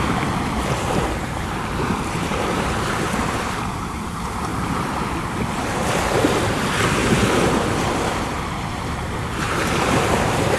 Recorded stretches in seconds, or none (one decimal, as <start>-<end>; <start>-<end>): 4.5-5.5; 7.0-8.4